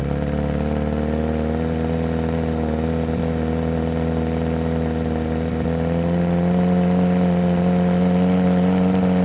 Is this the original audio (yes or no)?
yes